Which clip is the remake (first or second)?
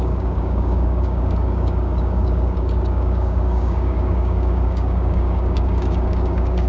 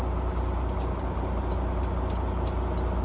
first